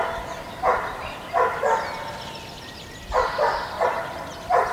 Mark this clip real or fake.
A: real